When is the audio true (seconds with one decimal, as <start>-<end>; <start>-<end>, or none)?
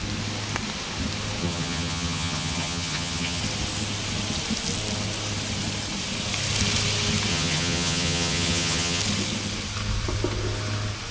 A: 0.0-1.4; 3.4-7.3; 9.0-11.1